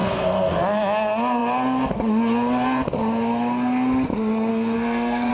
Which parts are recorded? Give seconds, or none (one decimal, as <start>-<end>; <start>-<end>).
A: 0.5-4.5